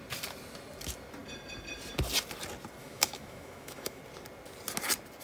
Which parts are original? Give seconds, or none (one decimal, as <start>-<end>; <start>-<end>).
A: 0.0-2.8; 4.0-5.2